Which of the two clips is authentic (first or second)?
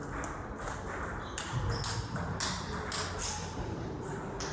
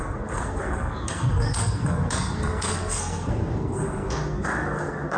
first